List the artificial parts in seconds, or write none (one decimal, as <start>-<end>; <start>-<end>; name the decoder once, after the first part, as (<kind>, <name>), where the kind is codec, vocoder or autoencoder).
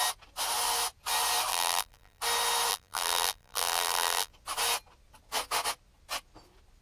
1.5-2.2 (vocoder, BigVGAN v2); 2.7-4.3